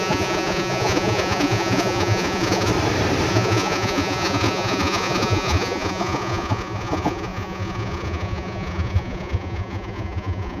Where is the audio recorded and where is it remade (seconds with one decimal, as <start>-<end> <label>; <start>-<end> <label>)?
0.0-2.7 remade; 2.7-3.3 recorded; 3.3-10.6 remade